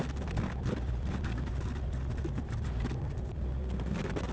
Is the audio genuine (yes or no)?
yes